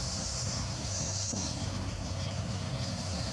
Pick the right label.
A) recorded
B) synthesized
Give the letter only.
B